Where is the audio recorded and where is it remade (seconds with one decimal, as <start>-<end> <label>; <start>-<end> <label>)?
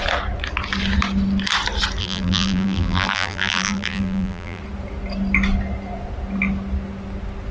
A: 0.0-2.0 recorded; 2.0-4.6 remade; 4.6-7.5 recorded